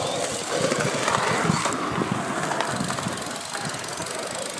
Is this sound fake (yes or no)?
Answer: no